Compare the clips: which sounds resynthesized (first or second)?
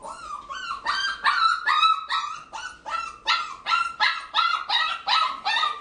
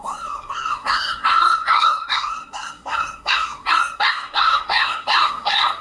second